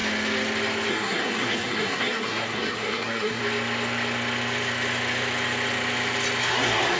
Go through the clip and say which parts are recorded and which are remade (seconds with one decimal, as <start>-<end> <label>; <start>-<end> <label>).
0.0-0.9 recorded; 0.9-3.4 remade; 3.4-6.4 recorded; 6.4-7.0 remade